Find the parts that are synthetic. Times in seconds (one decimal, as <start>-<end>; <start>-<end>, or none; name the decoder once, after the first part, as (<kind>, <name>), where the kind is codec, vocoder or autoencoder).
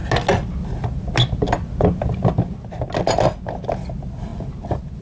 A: none